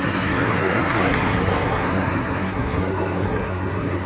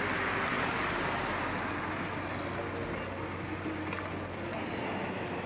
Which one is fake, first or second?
first